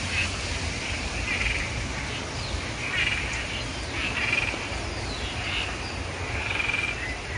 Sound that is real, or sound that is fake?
real